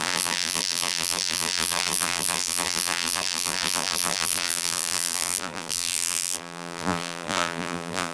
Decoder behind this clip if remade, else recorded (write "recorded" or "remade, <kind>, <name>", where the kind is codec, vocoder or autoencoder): remade, vocoder, BigVGAN v2